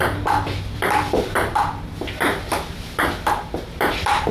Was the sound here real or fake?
fake